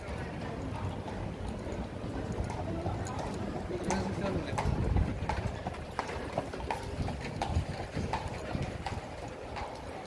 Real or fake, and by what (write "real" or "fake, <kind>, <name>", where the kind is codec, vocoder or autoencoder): real